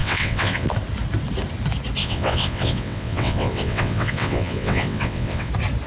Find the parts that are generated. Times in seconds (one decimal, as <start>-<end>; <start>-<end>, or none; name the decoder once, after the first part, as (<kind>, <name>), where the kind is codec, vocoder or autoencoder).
0.0-0.7 (vocoder, WaveNeXt); 2.0-5.5